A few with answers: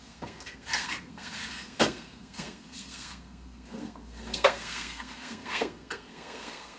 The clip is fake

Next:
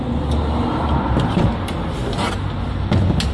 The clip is real